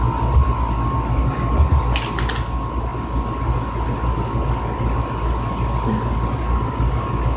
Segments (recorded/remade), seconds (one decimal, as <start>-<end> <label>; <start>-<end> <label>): 0.0-7.4 recorded